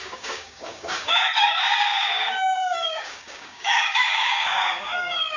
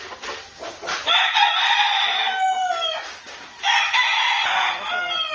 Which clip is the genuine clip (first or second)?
second